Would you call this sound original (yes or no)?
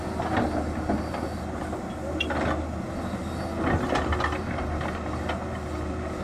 yes